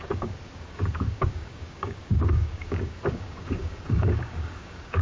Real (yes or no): no